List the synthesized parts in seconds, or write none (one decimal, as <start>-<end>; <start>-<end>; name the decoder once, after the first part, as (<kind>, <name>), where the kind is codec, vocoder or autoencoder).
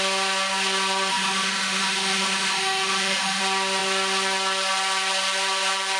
1.1-3.4 (autoencoder, DAC-VAE)